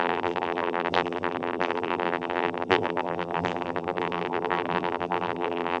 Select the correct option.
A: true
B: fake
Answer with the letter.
B